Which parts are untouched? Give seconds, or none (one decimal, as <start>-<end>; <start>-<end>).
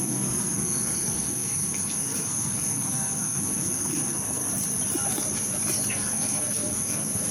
4.4-5.9